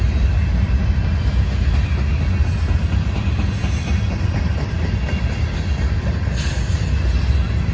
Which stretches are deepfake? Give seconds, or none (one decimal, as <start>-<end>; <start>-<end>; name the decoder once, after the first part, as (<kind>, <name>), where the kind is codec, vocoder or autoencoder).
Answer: none